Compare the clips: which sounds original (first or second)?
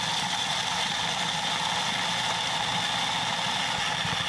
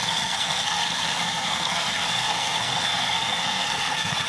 first